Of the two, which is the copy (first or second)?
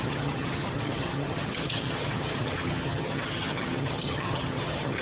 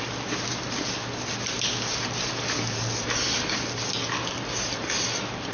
first